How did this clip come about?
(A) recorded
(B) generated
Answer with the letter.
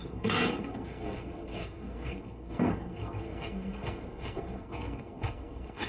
B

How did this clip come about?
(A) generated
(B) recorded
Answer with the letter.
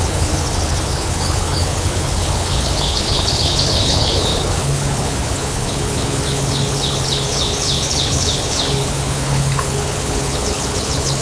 A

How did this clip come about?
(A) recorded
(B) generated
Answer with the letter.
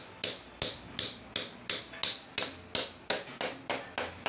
A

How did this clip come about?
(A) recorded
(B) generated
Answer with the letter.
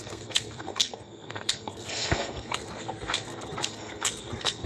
B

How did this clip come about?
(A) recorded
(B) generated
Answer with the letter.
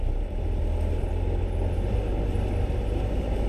A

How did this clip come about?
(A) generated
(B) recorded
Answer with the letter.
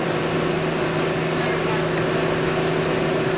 B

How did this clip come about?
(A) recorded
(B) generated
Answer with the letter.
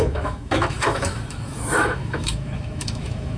B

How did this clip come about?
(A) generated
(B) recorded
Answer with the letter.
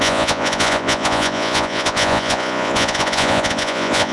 A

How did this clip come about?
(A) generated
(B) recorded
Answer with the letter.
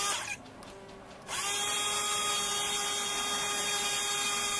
B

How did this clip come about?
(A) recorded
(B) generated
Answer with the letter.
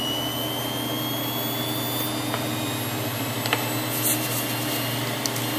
A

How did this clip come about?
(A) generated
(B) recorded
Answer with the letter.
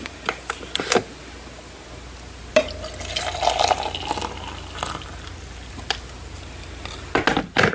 B